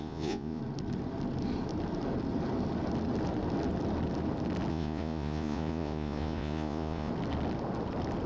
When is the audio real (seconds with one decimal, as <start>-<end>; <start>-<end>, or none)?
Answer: 0.6-4.7; 7.1-8.3